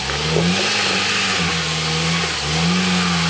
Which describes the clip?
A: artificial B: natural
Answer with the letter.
B